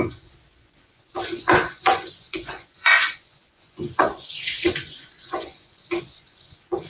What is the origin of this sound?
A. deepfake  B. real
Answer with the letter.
A